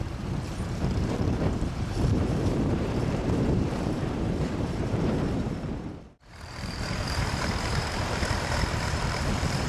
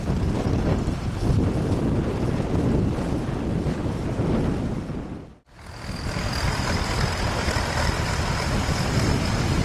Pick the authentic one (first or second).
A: second